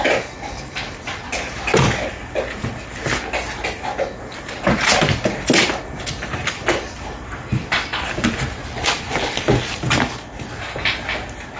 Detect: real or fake real